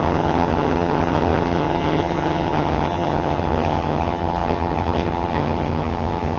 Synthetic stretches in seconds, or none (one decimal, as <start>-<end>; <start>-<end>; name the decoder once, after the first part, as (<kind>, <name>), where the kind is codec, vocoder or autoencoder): 0.0-6.4 (vocoder, HiFi-GAN)

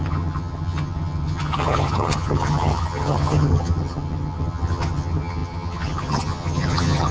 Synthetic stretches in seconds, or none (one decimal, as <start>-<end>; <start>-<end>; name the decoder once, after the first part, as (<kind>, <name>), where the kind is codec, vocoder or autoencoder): 0.0-7.1 (vocoder, HiFi-GAN)

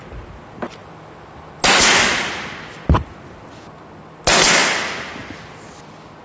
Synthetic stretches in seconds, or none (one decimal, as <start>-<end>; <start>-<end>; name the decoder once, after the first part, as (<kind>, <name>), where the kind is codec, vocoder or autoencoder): none

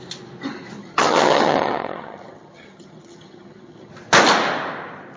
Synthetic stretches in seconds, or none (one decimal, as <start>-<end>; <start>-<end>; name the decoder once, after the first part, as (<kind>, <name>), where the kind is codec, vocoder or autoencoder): 0.8-3.9 (vocoder, HiFi-GAN)

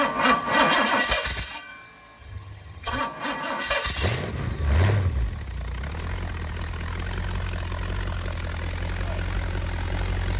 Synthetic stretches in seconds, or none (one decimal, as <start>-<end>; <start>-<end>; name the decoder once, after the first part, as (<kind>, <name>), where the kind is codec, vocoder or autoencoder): 2.2-3.0 (vocoder, HiFi-GAN)

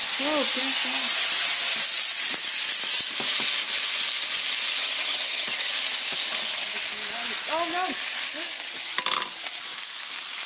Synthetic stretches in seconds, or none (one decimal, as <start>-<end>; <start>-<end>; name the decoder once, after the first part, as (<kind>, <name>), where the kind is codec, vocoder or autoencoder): 4.8-5.7 (vocoder, HiFi-GAN)

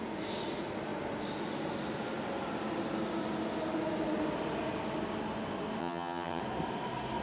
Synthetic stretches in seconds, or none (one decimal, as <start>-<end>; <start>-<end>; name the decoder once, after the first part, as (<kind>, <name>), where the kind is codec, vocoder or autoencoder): 5.8-6.4 (vocoder, HiFi-GAN)

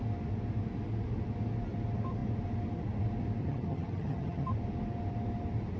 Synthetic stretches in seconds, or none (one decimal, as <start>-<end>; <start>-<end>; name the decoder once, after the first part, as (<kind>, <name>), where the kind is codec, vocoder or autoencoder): 3.4-4.5 (vocoder, HiFi-GAN)